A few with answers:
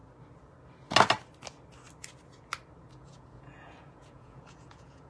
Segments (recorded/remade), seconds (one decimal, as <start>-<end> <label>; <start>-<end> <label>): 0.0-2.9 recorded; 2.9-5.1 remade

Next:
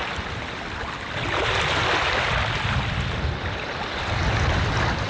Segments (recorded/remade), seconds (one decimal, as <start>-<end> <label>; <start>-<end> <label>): 0.0-5.1 recorded

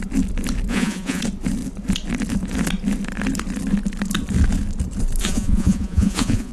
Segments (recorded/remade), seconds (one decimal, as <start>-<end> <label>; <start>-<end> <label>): 0.0-0.7 recorded; 0.7-1.2 remade; 1.2-5.2 recorded; 5.2-6.5 remade

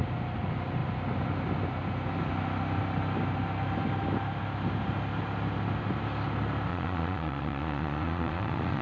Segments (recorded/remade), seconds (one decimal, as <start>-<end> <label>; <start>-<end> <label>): 0.0-6.7 recorded; 6.7-8.8 remade

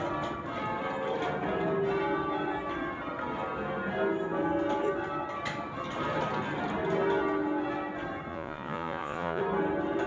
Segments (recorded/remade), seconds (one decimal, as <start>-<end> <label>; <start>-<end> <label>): 0.0-8.3 recorded; 8.3-9.4 remade; 9.4-10.1 recorded

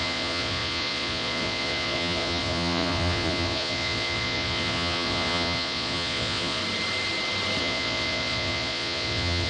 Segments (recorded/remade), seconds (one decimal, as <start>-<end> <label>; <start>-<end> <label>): 0.0-6.6 remade; 6.6-7.6 recorded; 7.6-9.5 remade

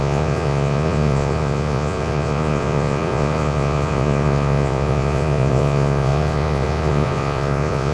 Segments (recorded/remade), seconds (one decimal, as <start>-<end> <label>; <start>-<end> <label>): 0.0-7.9 remade

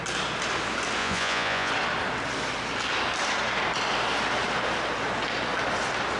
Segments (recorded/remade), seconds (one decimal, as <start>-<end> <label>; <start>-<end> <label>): 0.0-1.0 recorded; 1.0-1.7 remade; 1.7-6.2 recorded